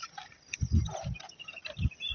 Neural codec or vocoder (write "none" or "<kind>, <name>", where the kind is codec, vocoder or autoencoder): none